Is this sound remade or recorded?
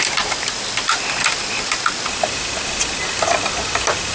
recorded